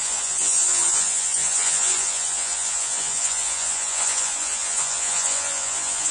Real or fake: fake